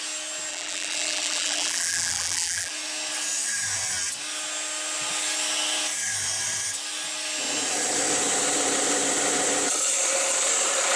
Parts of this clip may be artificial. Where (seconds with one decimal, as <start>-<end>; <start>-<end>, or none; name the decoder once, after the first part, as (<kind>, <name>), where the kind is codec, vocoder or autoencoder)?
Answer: 0.5-2.7 (vocoder, BigVGAN v2)